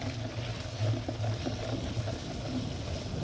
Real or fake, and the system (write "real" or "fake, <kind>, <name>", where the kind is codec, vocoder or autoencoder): real